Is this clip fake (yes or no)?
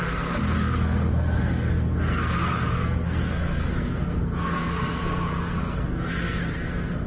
yes